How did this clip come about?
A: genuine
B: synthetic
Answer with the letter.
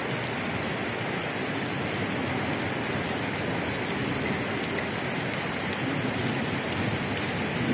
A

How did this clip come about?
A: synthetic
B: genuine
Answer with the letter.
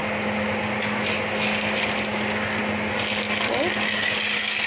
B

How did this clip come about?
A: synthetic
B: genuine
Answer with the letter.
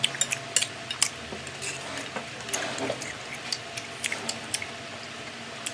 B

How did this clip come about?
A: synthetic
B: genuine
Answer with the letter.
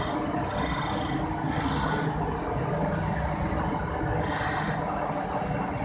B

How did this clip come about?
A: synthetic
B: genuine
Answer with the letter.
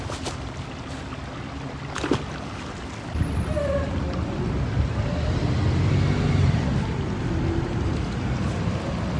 B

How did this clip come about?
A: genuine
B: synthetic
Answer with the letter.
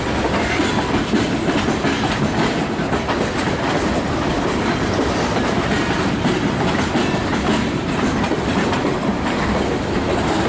A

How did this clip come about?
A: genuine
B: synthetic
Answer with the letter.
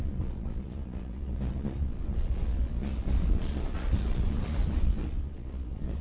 B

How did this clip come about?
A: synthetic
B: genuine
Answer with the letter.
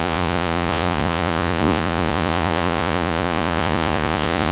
A